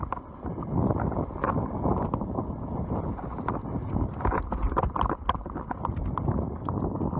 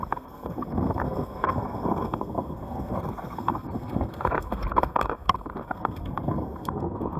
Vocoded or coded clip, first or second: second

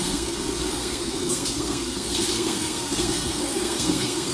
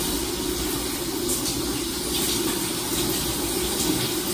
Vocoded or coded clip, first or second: first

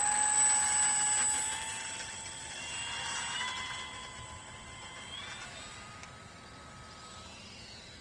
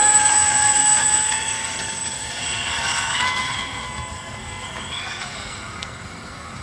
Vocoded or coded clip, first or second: second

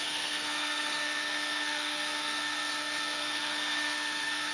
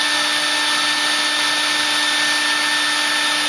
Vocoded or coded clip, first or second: first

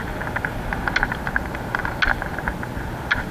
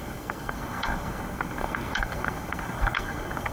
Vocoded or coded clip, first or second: second